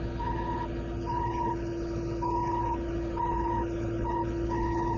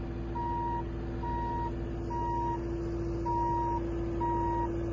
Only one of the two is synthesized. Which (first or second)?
first